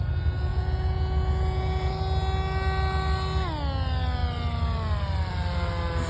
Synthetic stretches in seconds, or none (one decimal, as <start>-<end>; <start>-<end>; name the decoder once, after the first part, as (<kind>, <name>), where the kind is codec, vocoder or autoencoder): 0.5-1.9 (vocoder, Vocos)